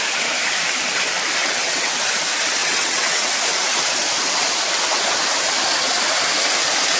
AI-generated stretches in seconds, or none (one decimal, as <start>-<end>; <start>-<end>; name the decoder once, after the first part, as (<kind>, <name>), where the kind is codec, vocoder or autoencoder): 1.4-1.9 (vocoder, WaveNeXt); 2.6-3.3